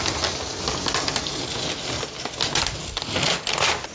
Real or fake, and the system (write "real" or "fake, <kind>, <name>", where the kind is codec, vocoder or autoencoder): real